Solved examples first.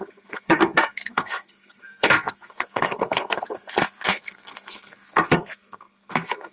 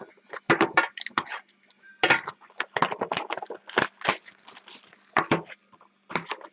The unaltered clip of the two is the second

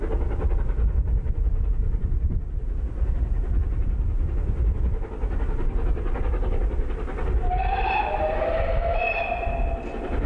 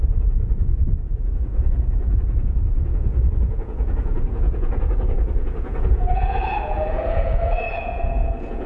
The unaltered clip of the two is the first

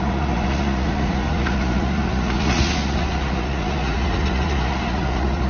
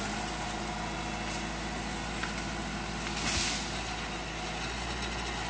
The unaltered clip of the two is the second